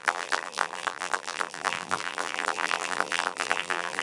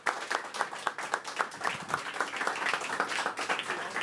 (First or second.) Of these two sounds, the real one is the second